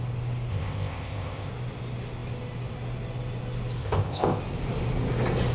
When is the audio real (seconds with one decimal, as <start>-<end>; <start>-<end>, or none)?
0.0-0.5; 1.5-3.8; 4.4-5.5